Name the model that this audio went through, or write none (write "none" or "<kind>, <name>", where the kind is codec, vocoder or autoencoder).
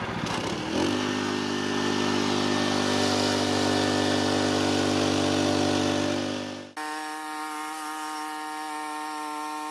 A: none